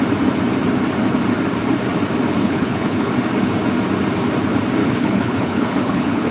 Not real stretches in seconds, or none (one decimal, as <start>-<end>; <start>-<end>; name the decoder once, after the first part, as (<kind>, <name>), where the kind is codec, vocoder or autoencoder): 2.4-3.1 (codec, HILCodec); 4.8-6.3